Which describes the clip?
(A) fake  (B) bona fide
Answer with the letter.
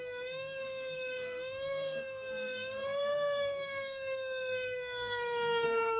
A